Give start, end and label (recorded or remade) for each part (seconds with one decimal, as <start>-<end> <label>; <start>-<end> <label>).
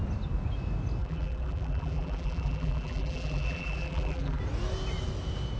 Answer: 0.0-1.0 recorded; 1.0-4.4 remade; 4.4-5.6 recorded